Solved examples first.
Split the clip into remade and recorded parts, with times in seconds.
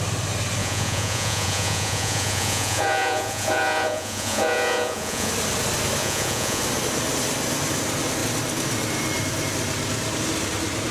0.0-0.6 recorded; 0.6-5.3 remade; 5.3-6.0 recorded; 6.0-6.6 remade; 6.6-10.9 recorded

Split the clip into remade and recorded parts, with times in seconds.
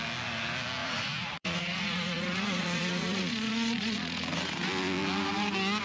0.0-0.8 recorded; 0.8-4.3 remade; 4.3-5.8 recorded